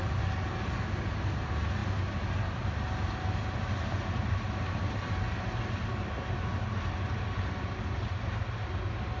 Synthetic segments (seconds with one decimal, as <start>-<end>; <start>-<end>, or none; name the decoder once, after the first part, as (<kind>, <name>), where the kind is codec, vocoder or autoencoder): none